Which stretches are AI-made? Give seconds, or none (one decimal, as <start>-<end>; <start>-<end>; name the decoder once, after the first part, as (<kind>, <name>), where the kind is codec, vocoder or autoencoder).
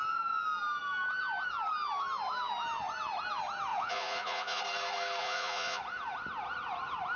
3.7-4.6 (vocoder, Vocos); 5.2-5.8